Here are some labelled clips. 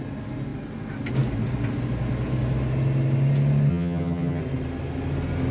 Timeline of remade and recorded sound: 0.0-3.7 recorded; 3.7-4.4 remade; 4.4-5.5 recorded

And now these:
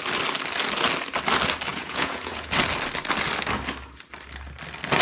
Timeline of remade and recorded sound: 0.0-1.7 recorded; 1.7-2.5 remade; 2.5-5.0 recorded